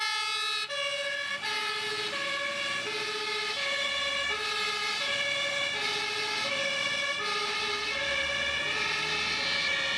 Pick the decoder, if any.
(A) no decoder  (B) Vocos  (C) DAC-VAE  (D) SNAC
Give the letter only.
A